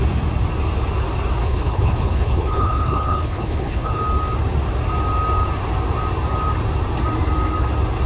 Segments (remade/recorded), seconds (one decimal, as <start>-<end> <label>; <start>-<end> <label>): 0.0-1.4 recorded; 1.4-4.0 remade; 4.0-8.1 recorded